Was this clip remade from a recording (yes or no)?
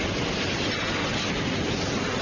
no